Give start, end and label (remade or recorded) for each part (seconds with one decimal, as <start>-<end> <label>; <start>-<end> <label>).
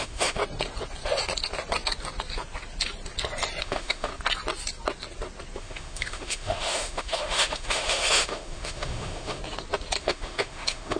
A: 0.0-0.4 remade; 0.4-3.6 recorded; 3.6-4.1 remade; 4.1-5.6 recorded; 5.6-9.4 remade; 9.4-10.0 recorded; 10.0-11.0 remade